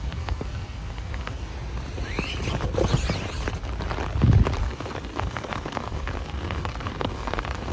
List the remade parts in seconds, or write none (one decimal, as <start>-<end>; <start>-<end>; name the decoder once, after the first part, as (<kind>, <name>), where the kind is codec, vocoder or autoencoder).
0.0-1.5 (codec, SNAC); 4.6-7.7